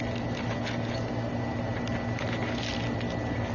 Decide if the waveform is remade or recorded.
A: recorded